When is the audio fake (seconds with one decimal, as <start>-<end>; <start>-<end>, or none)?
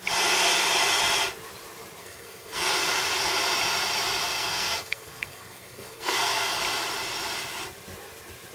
2.0-2.7; 4.2-6.6